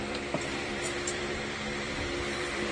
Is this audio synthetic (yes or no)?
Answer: yes